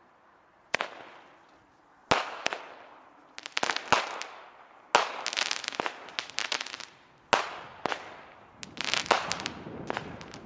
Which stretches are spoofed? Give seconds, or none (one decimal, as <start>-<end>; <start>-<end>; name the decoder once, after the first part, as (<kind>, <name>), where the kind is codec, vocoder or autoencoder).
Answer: none